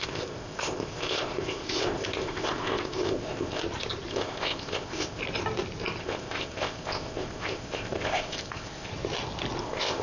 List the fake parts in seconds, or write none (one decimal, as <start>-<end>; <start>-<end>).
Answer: 0.0-3.6; 4.1-5.2; 6.0-8.9; 9.6-10.0